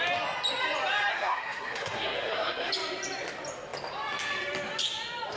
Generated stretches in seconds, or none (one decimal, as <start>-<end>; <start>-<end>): 1.1-2.7